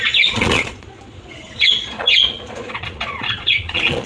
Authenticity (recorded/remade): remade